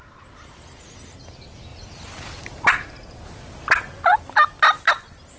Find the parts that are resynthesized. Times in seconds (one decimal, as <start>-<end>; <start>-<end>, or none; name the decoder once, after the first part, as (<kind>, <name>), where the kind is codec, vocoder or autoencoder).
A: none